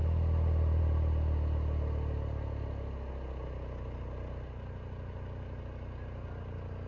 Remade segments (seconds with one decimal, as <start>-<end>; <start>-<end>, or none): none